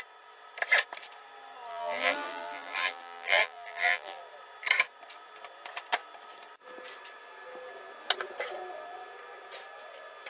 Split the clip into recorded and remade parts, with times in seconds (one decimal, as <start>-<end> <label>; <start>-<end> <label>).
0.0-1.7 recorded; 1.7-4.2 remade; 4.2-10.3 recorded